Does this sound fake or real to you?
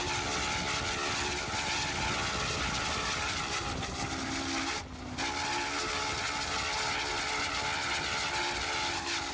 real